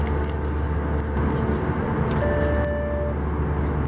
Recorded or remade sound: recorded